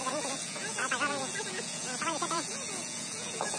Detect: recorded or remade remade